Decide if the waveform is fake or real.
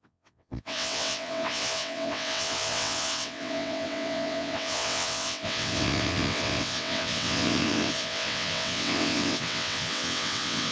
fake